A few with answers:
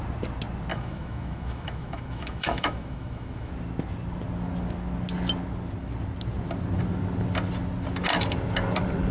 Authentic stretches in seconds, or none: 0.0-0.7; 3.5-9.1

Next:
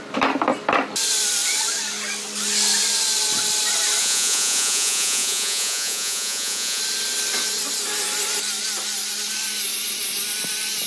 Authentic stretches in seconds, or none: 0.0-4.0; 6.8-10.9

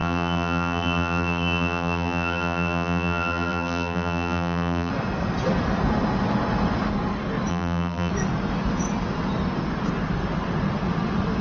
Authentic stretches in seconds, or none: 4.9-7.5; 8.1-11.4